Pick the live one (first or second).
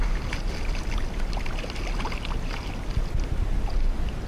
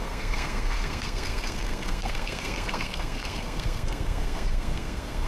first